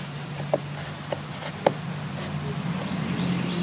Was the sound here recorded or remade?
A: recorded